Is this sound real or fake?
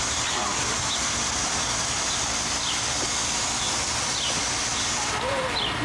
real